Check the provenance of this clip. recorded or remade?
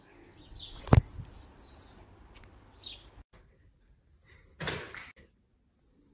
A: recorded